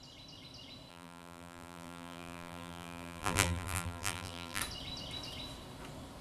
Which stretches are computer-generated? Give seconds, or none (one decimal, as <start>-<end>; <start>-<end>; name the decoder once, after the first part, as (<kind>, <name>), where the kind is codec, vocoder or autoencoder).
0.9-4.6 (vocoder, BigVGAN v2)